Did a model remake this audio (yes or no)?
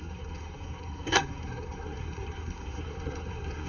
yes